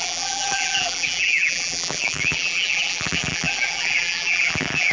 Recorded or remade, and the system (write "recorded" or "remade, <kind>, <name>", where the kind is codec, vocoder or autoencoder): remade, vocoder, BigVGAN v2